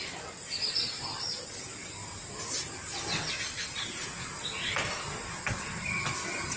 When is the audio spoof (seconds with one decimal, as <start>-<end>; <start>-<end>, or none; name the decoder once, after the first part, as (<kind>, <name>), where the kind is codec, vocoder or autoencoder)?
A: none